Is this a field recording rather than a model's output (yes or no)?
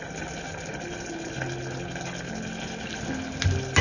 yes